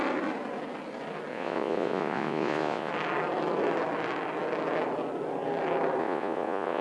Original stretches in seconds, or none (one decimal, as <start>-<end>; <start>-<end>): 0.0-1.3; 2.9-6.0